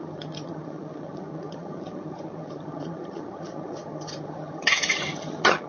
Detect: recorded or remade remade